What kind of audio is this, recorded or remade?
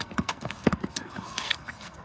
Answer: remade